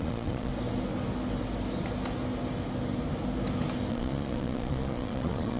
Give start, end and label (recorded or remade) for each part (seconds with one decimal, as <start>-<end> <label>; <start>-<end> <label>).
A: 0.0-0.5 remade; 0.5-3.9 recorded; 3.9-5.6 remade